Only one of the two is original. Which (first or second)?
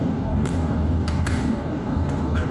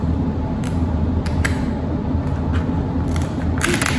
second